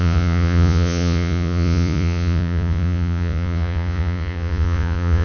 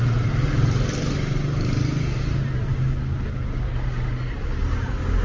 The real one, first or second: second